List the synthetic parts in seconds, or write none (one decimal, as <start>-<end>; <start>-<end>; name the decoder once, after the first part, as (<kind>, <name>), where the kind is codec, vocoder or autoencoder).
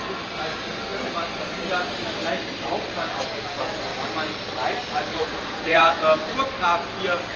5.1-5.9 (vocoder, Vocos)